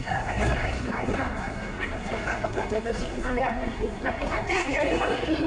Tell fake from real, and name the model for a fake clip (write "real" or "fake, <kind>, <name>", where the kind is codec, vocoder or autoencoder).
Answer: fake, codec, SNAC